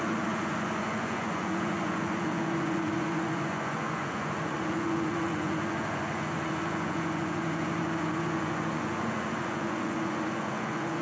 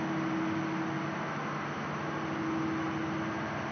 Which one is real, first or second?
second